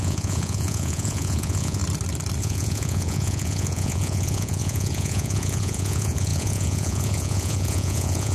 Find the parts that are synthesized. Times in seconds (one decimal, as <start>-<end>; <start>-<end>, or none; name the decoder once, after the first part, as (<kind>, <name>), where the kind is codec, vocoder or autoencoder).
0.0-1.8 (vocoder, Vocos); 2.4-8.3